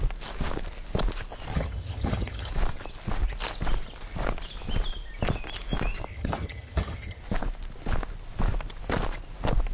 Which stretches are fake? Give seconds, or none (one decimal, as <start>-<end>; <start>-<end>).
1.5-2.5; 6.1-7.2